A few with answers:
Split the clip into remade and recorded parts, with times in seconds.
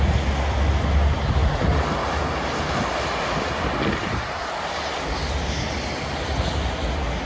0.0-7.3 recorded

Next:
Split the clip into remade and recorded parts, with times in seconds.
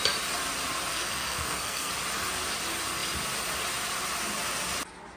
0.0-0.9 recorded; 0.9-1.9 remade; 1.9-5.2 recorded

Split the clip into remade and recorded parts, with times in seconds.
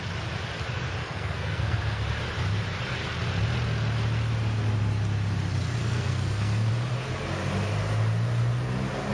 0.0-1.0 recorded; 1.0-2.0 remade; 2.0-5.8 recorded; 5.8-6.7 remade; 6.7-9.1 recorded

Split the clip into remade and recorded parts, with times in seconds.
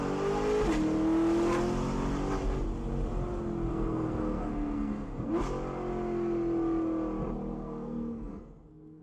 0.0-3.7 recorded; 3.7-5.3 remade; 5.3-7.5 recorded; 7.5-9.0 remade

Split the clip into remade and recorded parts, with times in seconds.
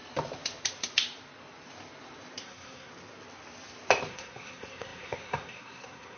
0.0-2.4 recorded; 2.4-2.9 remade; 2.9-4.1 recorded; 4.1-6.2 remade